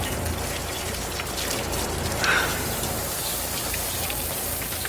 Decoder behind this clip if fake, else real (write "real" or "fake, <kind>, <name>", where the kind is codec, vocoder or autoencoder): real